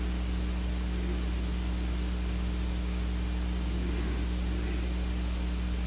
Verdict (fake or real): real